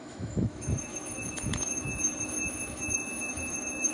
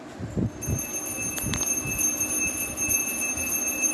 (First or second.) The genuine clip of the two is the second